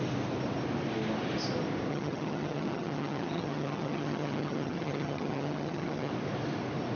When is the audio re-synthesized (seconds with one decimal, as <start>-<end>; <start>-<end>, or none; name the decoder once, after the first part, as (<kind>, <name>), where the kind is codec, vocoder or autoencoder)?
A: 1.9-6.1 (vocoder, HiFi-GAN)